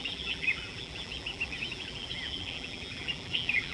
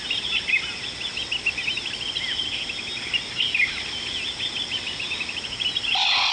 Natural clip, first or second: second